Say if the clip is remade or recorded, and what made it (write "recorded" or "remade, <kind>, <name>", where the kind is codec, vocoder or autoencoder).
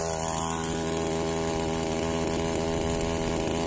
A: recorded